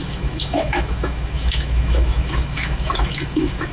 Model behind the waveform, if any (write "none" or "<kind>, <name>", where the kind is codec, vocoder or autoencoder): autoencoder, DAC-VAE